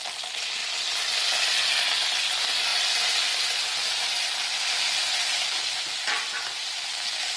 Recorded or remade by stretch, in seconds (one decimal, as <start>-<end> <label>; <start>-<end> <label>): 0.0-7.4 recorded